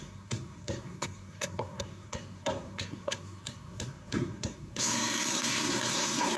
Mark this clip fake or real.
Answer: fake